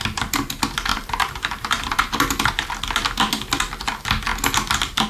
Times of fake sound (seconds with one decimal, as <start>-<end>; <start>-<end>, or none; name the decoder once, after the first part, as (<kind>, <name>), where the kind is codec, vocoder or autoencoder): 0.9-2.4 (vocoder, BigVGAN v2)